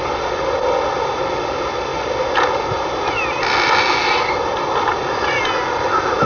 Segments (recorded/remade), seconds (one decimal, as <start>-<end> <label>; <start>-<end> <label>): 0.0-6.3 recorded